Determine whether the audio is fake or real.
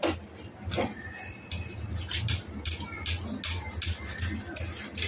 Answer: real